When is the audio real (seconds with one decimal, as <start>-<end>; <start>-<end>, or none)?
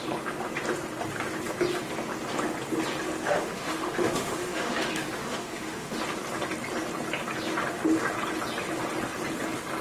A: 0.0-3.2; 6.0-9.8